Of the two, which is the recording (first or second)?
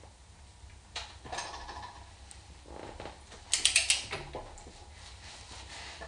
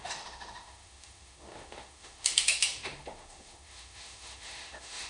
first